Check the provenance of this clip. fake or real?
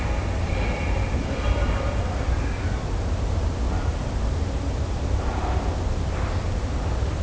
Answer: real